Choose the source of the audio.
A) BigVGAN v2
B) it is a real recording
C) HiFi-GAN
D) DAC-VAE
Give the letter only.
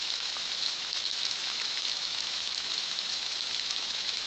D